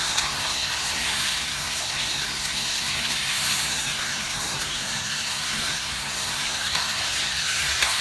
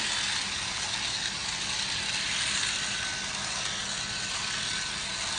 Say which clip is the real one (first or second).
second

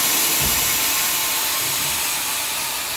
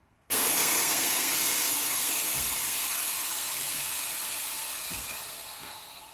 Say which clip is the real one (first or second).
first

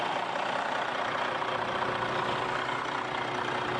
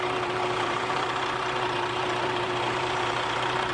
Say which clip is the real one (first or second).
first